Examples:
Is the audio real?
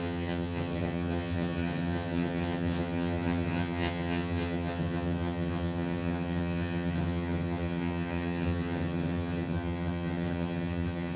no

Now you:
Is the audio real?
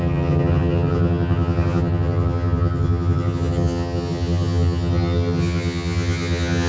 no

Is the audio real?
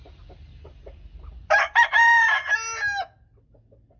yes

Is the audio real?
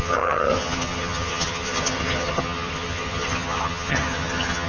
no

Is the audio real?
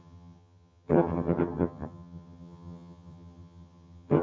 no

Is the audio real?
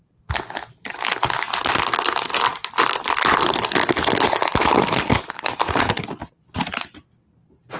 yes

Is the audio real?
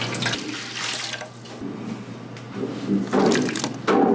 yes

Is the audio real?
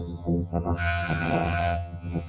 no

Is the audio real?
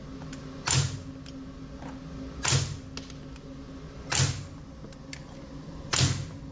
yes